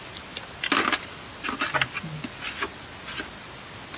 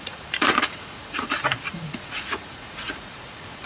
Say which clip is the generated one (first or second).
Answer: second